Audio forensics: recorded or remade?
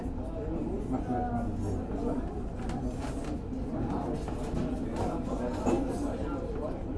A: recorded